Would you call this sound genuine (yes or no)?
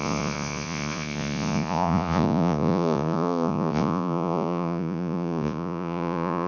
no